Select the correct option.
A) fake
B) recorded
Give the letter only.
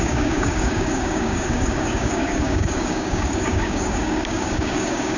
A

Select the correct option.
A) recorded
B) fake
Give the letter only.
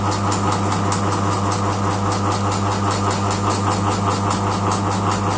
A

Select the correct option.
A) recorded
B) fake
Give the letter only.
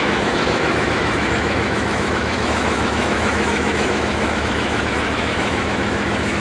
B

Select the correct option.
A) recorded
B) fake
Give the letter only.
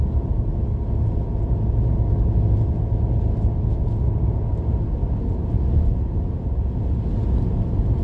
A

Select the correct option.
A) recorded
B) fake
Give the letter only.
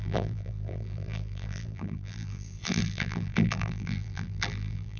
B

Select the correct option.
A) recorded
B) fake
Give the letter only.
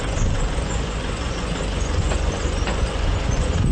B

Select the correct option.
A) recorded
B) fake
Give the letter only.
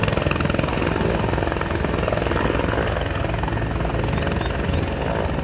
A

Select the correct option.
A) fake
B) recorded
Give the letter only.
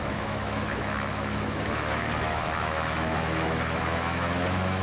A